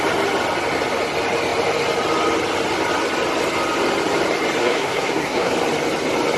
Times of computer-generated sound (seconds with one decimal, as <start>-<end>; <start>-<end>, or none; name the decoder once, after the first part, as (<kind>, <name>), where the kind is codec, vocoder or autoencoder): 4.6-5.5 (codec, SNAC)